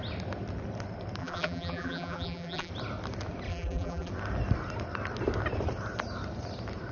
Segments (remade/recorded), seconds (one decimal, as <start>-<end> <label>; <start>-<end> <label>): 0.0-1.2 recorded; 1.2-2.7 remade; 2.7-3.5 recorded; 3.5-4.1 remade; 4.1-6.9 recorded